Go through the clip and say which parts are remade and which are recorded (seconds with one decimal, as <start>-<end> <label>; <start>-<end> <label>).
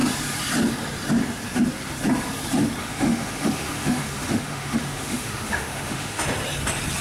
0.0-2.8 recorded; 2.8-6.2 remade; 6.2-7.0 recorded